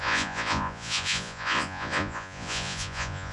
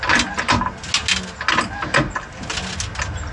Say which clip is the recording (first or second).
second